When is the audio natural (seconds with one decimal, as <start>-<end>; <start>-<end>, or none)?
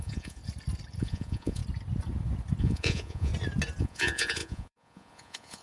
0.4-1.0; 1.6-2.6; 3.3-3.8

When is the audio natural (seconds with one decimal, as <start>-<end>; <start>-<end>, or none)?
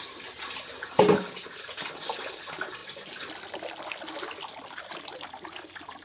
0.0-6.0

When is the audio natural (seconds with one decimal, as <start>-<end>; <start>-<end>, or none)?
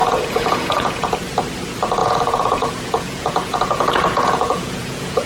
1.1-2.0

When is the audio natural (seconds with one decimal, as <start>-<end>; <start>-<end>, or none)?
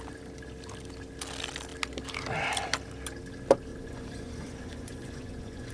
0.0-3.7